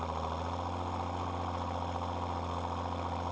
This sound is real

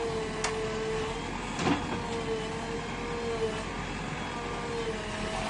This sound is real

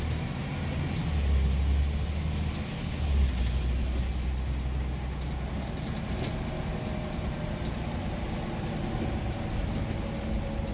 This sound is real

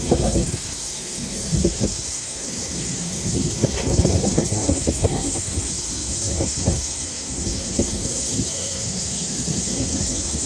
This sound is fake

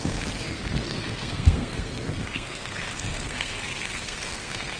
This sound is fake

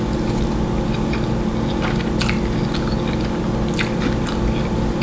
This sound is real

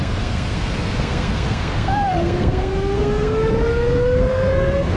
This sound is fake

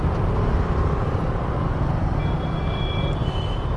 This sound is real